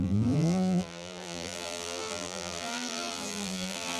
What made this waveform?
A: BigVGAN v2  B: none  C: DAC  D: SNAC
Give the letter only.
A